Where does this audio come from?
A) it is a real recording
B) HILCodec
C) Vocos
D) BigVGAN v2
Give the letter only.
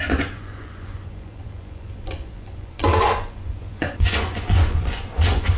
C